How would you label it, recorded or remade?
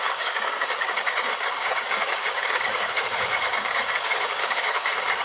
remade